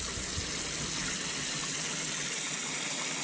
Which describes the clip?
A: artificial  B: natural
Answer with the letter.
B